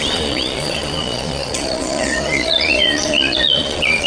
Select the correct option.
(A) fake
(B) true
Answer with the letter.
A